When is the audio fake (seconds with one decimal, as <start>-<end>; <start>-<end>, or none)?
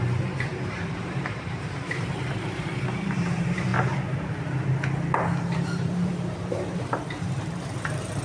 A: 0.0-3.7; 5.4-8.2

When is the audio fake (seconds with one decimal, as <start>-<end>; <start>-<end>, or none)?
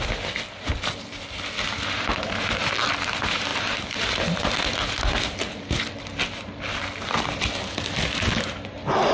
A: none